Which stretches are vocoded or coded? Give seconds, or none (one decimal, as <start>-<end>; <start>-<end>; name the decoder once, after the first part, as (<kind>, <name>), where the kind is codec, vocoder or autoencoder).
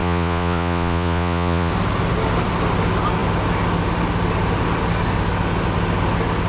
0.0-1.7 (vocoder, Vocos)